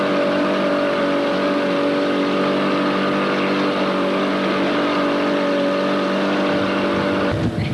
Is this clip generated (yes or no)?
no